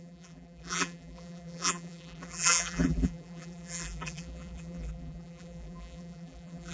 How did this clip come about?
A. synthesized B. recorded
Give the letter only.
A